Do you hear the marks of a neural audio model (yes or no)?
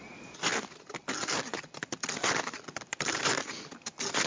no